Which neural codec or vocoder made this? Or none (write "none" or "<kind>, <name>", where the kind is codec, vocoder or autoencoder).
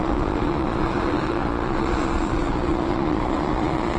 vocoder, Vocos